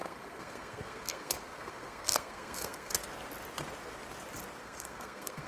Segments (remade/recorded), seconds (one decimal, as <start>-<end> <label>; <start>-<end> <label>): 0.0-2.9 remade; 2.9-4.6 recorded; 4.6-5.5 remade